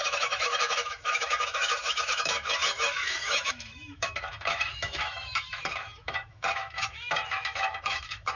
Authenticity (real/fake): fake